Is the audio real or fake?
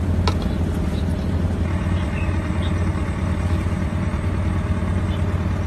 real